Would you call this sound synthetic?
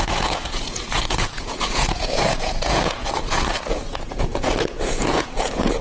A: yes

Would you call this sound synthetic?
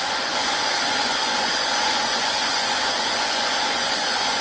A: yes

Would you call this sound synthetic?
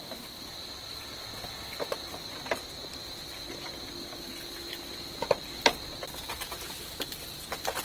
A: no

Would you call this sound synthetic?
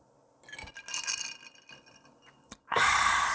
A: no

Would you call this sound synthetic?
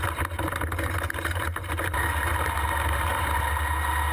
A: no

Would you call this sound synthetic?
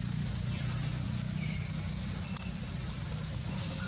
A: no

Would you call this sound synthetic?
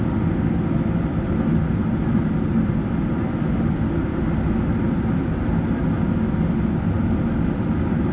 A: no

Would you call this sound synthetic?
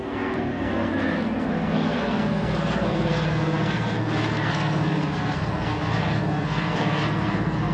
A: yes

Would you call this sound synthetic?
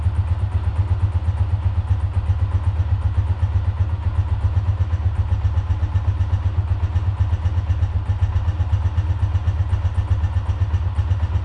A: no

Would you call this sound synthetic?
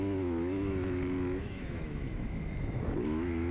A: yes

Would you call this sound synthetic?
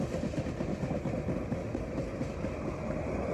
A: no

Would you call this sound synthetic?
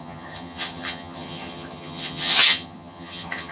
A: yes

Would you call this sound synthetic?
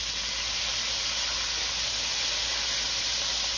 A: no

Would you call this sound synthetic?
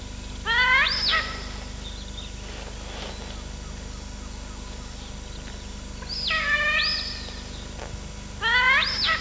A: no